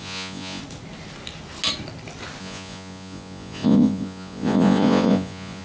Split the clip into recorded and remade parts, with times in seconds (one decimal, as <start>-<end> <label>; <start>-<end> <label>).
0.0-0.6 remade; 0.6-2.4 recorded; 2.4-5.6 remade

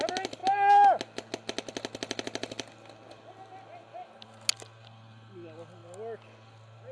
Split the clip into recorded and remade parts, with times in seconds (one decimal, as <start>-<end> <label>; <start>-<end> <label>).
0.0-6.9 recorded

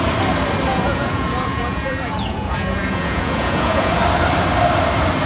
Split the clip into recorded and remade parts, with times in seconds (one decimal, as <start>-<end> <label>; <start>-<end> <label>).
0.0-0.7 recorded; 0.7-3.9 remade; 3.9-5.3 recorded

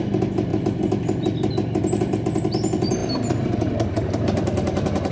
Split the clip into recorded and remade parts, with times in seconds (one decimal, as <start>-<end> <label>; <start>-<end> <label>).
0.0-5.1 recorded